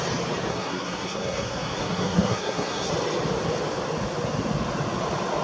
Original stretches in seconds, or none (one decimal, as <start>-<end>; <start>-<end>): 0.0-0.5; 2.9-5.4